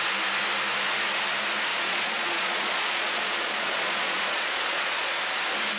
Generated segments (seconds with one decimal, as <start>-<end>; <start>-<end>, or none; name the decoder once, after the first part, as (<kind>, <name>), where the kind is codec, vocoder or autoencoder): 1.7-5.2 (vocoder, Vocos)